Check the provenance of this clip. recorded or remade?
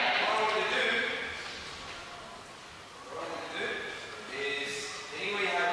recorded